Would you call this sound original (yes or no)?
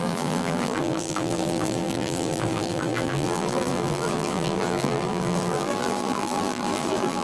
no